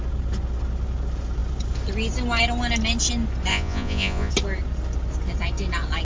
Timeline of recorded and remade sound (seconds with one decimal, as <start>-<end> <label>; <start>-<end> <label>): 0.0-3.5 recorded; 3.5-4.3 remade; 4.3-6.0 recorded

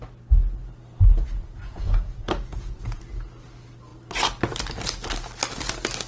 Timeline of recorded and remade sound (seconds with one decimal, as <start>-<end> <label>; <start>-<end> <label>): 0.0-1.1 recorded; 1.1-3.0 remade; 3.0-6.1 recorded

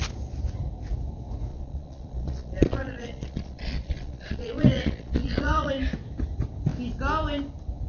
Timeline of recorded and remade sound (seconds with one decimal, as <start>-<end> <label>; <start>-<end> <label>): 0.0-1.5 recorded; 1.5-5.7 remade; 5.7-7.9 recorded

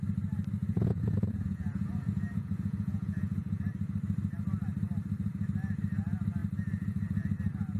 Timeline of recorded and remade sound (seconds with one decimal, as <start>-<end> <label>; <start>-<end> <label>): 0.0-0.6 recorded; 0.6-3.6 remade; 3.6-7.8 recorded

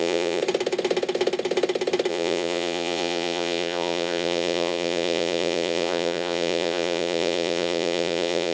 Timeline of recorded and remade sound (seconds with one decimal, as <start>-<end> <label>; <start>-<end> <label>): 0.0-0.4 remade; 0.4-2.1 recorded; 2.1-8.5 remade

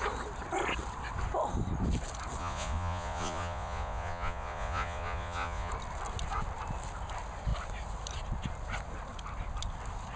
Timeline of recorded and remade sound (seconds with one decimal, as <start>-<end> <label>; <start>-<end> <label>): 0.0-2.4 recorded; 2.4-5.7 remade; 5.7-10.2 recorded